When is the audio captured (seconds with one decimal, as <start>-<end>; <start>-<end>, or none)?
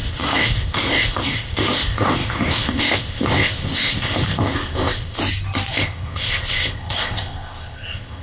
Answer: 5.2-5.7